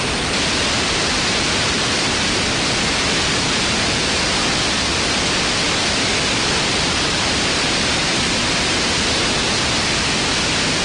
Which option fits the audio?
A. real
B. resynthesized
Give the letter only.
A